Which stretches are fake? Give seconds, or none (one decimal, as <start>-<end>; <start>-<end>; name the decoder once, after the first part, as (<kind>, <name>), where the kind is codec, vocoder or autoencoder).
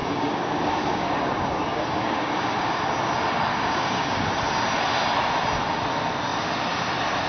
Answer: 0.0-2.9 (codec, DAC); 3.5-4.4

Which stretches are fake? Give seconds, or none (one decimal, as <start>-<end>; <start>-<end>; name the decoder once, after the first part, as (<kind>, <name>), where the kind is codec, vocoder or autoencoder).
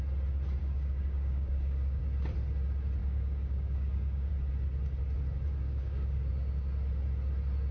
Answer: 0.6-2.0 (codec, DAC); 3.0-4.3; 5.5-6.3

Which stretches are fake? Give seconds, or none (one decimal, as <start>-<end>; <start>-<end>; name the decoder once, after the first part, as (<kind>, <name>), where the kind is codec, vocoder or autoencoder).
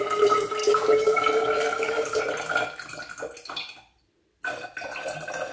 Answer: 0.6-2.2 (codec, DAC)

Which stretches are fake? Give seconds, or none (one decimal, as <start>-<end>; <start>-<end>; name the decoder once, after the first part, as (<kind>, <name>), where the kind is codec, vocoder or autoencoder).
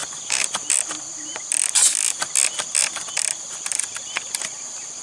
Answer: none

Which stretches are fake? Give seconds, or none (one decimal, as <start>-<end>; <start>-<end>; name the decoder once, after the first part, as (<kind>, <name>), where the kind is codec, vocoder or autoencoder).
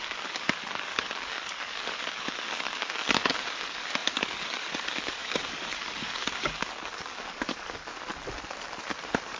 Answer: 0.0-8.1 (codec, DAC); 9.0-9.4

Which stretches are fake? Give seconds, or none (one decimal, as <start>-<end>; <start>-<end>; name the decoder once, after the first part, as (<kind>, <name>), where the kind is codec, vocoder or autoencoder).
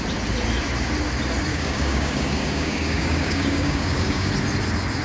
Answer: 1.5-4.3 (codec, DAC)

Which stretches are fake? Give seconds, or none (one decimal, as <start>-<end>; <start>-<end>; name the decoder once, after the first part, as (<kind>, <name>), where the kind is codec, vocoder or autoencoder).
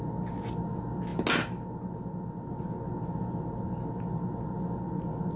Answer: none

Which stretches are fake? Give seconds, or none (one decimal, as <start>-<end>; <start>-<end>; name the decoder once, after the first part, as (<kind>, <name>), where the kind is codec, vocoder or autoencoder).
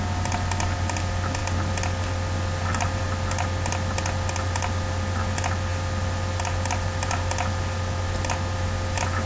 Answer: none